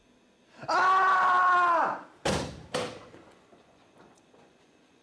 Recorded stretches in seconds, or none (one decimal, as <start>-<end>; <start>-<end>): 0.0-3.0

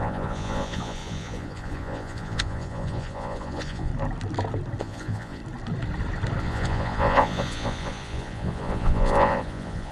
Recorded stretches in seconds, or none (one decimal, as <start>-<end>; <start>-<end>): 3.9-4.8; 5.4-6.4

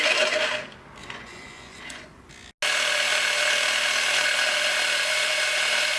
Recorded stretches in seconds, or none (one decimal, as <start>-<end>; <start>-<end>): 0.0-1.0; 2.3-6.0